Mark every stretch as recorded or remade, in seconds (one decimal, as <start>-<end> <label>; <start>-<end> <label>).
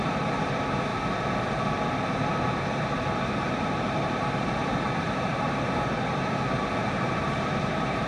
0.0-0.9 remade; 0.9-2.2 recorded; 2.2-8.1 remade